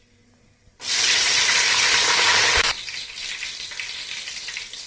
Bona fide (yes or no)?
yes